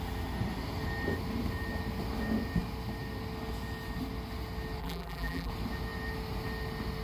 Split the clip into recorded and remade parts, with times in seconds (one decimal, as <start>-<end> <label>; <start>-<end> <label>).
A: 0.0-4.8 recorded; 4.8-5.5 remade; 5.5-7.0 recorded